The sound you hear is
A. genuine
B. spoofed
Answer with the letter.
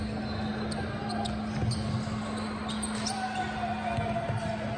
A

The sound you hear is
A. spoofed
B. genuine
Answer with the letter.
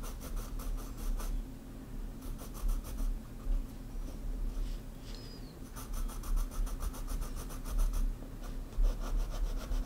B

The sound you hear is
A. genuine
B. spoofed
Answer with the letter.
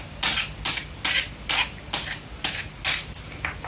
A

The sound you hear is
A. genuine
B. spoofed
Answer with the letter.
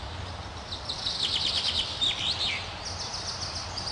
A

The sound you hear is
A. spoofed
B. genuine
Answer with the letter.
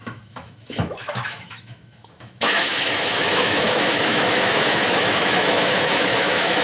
A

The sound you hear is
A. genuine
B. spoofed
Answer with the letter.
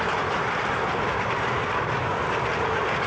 A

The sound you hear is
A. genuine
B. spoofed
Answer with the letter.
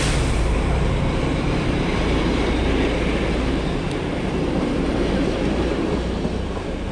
B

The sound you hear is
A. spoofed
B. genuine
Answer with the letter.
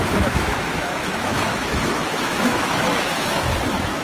A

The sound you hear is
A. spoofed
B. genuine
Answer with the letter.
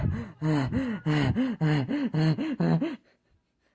B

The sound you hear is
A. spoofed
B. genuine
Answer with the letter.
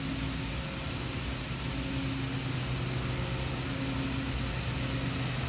B